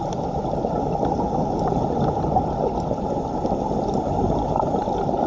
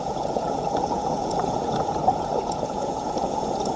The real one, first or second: first